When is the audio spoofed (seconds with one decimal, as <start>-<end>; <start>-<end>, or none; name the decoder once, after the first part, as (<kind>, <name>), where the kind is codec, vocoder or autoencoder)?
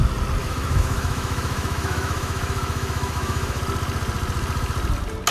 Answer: 0.4-3.6 (autoencoder, DAC-VAE)